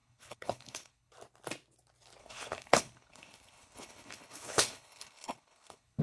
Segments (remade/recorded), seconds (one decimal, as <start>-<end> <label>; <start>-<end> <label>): 0.0-1.1 remade; 1.1-2.2 recorded; 2.2-6.0 remade